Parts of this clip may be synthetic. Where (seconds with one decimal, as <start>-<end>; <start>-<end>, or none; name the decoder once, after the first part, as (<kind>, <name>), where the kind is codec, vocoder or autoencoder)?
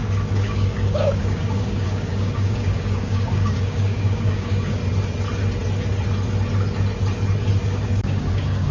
0.0-4.8 (codec, DAC); 7.6-8.7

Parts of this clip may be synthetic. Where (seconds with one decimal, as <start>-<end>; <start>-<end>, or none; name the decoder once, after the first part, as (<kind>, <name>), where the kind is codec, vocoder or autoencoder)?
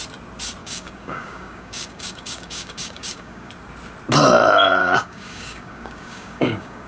0.6-3.5 (codec, DAC); 4.8-6.9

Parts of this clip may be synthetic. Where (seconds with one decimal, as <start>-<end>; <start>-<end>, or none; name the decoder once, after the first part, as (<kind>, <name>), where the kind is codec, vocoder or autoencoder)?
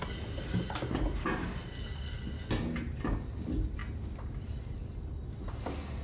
none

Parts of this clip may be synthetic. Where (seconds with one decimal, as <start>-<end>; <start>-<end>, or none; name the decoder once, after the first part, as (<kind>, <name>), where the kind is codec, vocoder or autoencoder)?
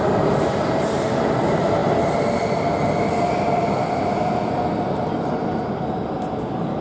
none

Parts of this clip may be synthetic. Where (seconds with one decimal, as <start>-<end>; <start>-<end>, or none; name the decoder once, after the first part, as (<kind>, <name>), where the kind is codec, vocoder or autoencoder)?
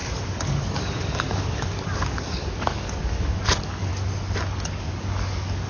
0.0-3.9 (codec, DAC); 4.8-5.7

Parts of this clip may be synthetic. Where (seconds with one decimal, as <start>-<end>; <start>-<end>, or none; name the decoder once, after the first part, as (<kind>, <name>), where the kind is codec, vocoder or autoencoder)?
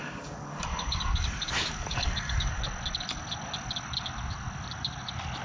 0.0-2.6 (codec, DAC)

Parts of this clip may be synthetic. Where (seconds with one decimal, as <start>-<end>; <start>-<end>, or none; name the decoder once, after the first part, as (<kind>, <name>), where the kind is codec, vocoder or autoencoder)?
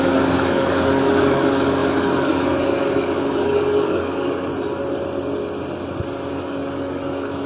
0.0-4.5 (codec, DAC); 6.3-7.5